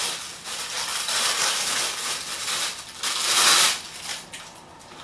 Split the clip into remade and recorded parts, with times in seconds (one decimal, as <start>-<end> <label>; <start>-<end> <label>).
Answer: 0.0-0.9 recorded; 0.9-1.7 remade; 1.7-5.0 recorded